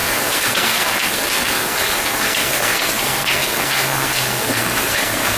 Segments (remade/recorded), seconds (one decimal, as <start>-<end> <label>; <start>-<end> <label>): 0.0-5.4 remade